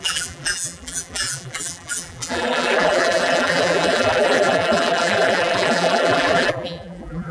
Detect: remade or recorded remade